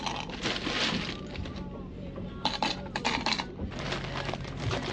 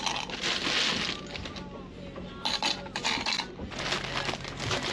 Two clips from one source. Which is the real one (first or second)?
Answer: second